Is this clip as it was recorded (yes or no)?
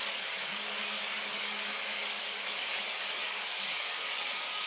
no